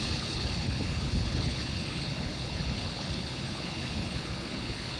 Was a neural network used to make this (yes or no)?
yes